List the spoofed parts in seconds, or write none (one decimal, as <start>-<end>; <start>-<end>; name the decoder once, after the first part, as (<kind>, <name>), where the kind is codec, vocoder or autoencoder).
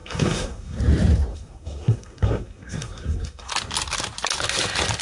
0.0-0.8 (codec, SNAC); 1.3-3.5